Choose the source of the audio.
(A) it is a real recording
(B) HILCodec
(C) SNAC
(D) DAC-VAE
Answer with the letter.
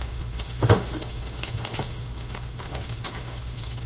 D